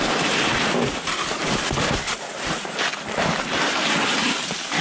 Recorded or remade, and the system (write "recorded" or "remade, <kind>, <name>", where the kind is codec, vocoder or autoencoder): recorded